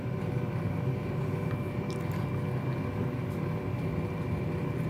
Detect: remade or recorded recorded